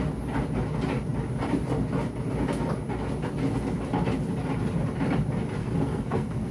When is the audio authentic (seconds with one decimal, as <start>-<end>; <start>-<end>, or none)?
0.0-5.6